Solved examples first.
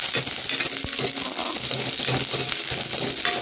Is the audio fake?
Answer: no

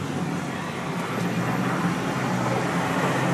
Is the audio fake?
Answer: no